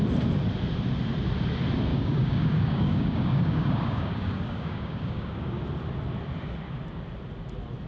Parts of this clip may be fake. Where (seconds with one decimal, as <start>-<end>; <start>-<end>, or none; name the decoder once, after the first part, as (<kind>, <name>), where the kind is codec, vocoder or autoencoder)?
1.9-5.6 (codec, DAC)